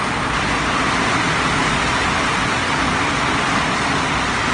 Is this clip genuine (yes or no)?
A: yes